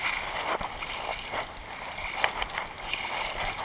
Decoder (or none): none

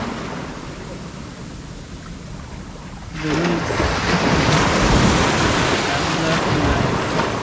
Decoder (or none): none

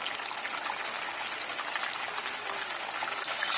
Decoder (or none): none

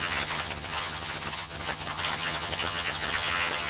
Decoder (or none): vocoder, HiFi-GAN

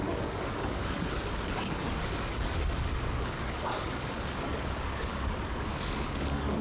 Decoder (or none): codec, DAC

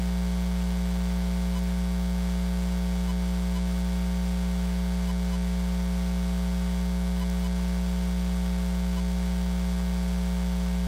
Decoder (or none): none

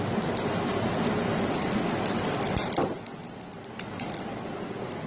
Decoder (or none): none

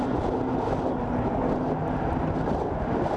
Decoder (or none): none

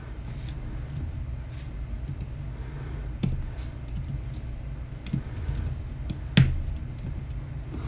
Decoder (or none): none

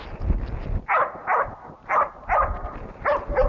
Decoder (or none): none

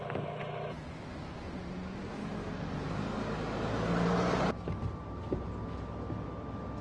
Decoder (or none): none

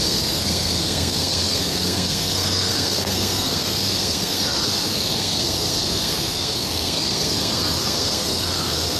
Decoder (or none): codec, SNAC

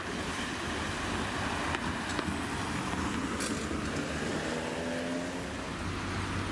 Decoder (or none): none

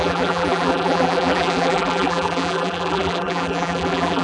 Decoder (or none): vocoder, BigVGAN v2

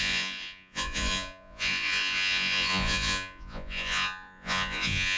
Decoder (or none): vocoder, Vocos